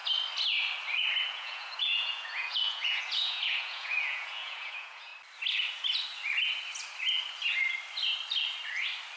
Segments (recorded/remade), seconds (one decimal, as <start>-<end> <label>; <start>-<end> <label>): 0.0-1.3 recorded; 1.3-5.1 remade; 5.1-9.2 recorded